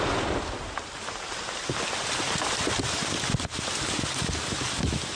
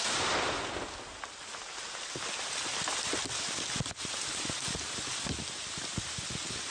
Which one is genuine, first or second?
second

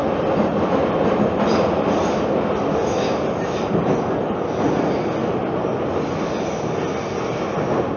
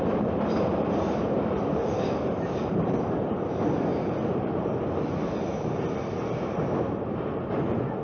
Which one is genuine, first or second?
first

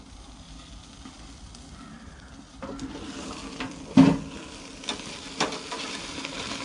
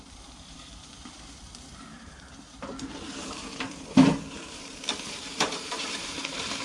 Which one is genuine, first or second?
first